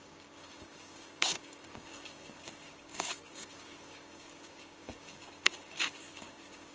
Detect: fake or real fake